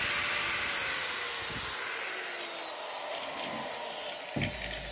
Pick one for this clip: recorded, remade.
recorded